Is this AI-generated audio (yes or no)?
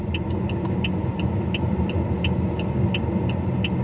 no